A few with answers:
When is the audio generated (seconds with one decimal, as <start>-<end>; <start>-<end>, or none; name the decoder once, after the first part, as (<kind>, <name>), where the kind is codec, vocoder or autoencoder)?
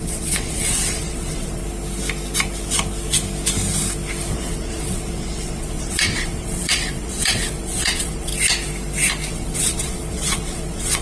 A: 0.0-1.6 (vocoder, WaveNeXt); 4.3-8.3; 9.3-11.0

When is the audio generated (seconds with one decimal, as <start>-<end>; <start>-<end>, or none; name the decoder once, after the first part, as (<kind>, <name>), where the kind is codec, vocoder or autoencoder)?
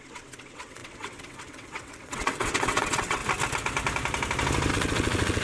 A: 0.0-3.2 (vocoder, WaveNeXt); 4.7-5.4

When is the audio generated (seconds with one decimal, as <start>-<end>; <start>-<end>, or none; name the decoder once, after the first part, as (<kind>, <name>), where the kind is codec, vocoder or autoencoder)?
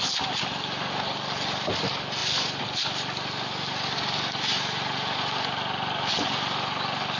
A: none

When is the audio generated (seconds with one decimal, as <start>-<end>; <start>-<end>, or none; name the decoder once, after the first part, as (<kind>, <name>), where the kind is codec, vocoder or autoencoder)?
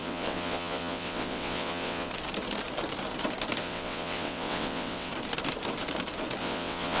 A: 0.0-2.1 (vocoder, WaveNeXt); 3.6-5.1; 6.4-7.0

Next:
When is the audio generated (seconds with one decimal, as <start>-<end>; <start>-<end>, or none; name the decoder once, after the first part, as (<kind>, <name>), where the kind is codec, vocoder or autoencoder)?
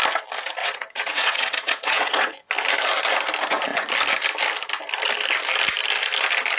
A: 0.6-2.4 (vocoder, WaveNeXt)